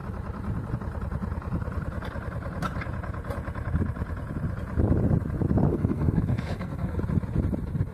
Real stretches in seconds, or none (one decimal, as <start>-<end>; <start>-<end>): 0.0-5.7; 7.0-7.9